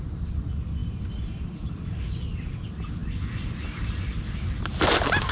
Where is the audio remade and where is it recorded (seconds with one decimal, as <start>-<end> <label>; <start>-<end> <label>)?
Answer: 0.0-5.3 recorded